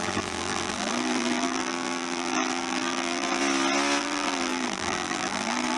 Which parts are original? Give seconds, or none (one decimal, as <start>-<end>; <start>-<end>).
3.4-4.0